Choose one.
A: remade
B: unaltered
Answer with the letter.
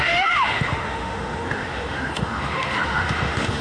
A